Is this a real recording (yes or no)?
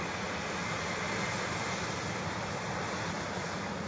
yes